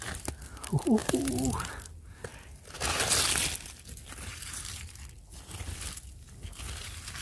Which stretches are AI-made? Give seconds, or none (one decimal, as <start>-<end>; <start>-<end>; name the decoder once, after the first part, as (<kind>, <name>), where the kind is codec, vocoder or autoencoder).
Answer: 1.0-1.7 (vocoder, BigVGAN v2)